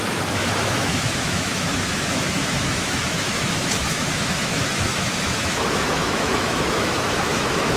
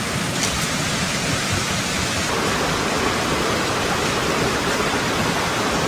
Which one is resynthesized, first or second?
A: first